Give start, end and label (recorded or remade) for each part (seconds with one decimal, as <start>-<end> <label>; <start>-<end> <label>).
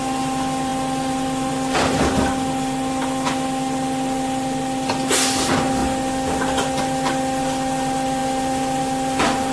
0.0-9.5 recorded